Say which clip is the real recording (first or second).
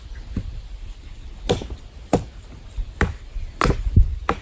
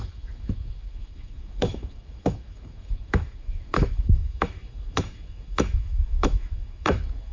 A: first